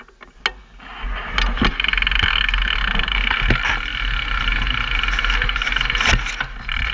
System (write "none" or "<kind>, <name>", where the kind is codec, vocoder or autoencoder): none